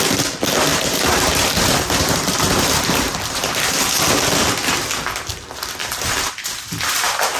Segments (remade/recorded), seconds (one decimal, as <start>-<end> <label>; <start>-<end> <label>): 0.0-0.7 recorded; 0.7-3.8 remade; 3.8-5.8 recorded; 5.8-6.3 remade; 6.3-7.4 recorded